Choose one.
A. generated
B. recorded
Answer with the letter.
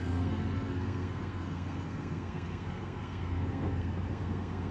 A